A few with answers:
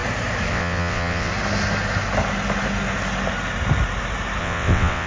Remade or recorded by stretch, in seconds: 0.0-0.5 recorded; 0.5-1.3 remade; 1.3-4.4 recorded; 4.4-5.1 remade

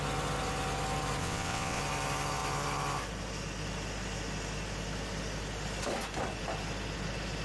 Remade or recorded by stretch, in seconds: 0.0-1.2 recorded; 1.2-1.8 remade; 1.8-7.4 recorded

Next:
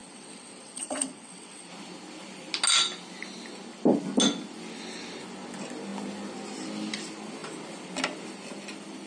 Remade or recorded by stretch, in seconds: 0.0-1.7 remade; 1.7-9.1 recorded

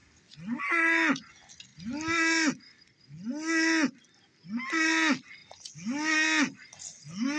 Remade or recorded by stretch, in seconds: 0.0-7.4 recorded

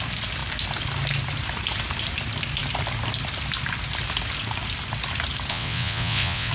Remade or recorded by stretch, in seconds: 0.0-5.5 recorded; 5.5-6.5 remade

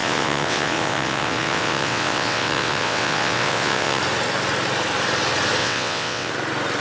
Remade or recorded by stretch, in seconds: 0.0-4.0 remade; 4.0-5.6 recorded; 5.6-6.3 remade; 6.3-6.8 recorded